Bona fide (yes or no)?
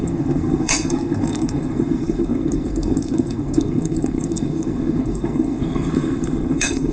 no